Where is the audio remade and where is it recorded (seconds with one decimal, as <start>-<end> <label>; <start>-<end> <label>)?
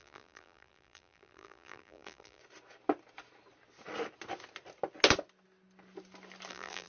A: 0.0-2.4 remade; 2.4-6.5 recorded; 6.5-6.9 remade